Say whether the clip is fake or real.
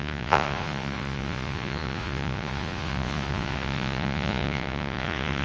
fake